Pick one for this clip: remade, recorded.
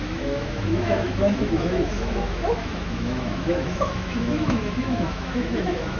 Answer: remade